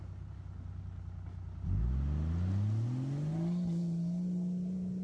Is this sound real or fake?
real